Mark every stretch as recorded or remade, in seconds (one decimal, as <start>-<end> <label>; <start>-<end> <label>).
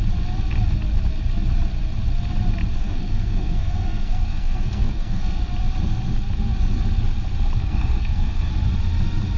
0.0-2.8 recorded; 2.8-5.4 remade; 5.4-7.6 recorded; 7.6-8.5 remade; 8.5-9.4 recorded